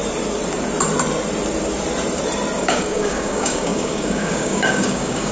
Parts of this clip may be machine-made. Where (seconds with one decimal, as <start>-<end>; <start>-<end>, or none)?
2.6-5.3